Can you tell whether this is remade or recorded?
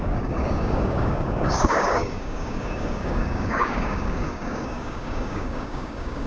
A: remade